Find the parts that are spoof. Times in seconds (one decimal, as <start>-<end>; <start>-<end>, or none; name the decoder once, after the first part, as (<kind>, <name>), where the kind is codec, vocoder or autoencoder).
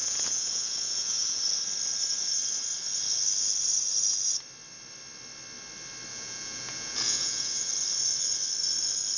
0.0-1.4 (vocoder, Vocos); 6.1-7.7